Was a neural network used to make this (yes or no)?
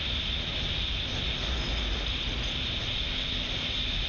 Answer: no